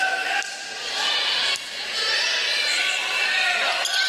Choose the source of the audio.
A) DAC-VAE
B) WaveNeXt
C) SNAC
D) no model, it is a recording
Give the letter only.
D